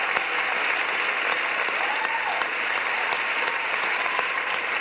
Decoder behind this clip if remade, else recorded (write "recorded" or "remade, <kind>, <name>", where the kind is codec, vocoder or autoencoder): recorded